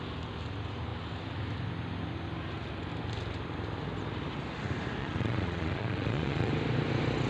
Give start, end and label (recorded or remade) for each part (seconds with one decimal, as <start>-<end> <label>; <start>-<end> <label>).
0.0-5.0 recorded; 5.0-6.5 remade; 6.5-7.3 recorded